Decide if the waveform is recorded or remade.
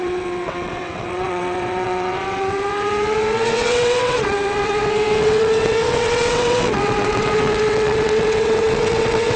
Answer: remade